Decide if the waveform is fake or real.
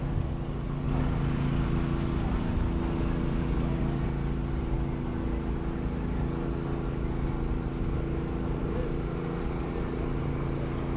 real